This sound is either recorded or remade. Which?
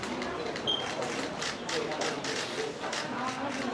recorded